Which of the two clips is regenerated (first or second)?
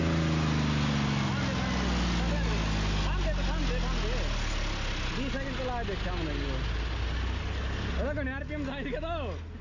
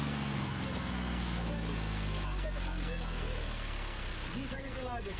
second